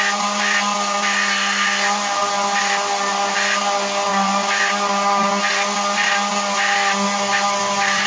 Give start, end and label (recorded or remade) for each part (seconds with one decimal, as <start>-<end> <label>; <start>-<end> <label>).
0.0-8.1 recorded